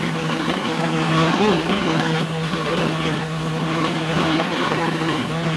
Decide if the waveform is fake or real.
fake